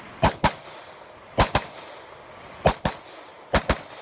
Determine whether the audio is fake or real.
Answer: real